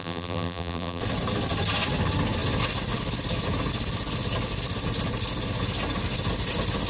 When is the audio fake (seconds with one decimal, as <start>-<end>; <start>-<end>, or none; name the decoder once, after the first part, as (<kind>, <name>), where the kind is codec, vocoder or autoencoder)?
0.0-1.0 (vocoder, BigVGAN v2)